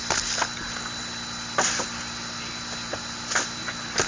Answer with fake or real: real